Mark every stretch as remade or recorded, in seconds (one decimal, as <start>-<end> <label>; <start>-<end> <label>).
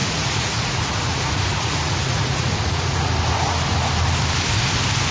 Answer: 0.0-3.1 remade; 3.1-5.1 recorded